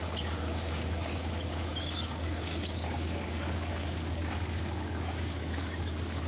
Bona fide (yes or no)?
no